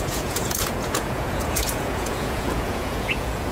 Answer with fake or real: fake